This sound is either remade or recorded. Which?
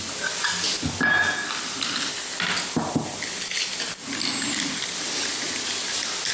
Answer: recorded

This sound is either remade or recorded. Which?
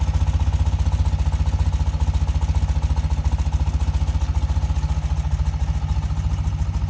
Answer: recorded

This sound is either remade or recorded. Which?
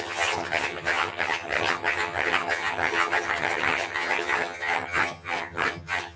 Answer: remade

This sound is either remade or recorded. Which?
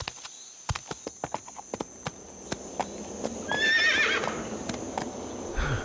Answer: recorded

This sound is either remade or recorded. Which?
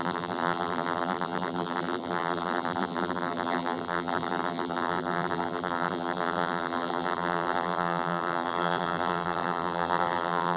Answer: remade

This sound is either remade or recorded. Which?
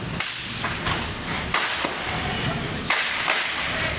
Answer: recorded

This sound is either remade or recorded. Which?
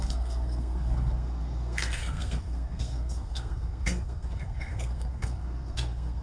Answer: remade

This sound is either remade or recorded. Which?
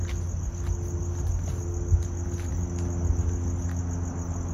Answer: recorded